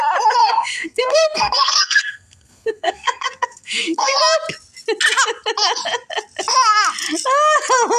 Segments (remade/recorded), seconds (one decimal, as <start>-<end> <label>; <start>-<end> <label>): 0.0-0.4 recorded; 0.4-4.2 remade; 4.2-8.0 recorded